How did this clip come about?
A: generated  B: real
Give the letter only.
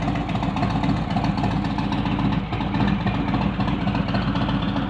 B